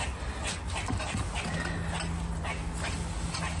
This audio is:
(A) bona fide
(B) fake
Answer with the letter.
A